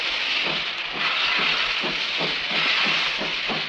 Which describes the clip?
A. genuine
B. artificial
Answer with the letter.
A